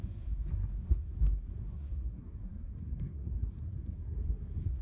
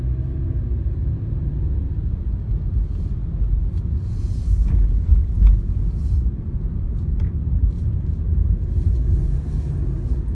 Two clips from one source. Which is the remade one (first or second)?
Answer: first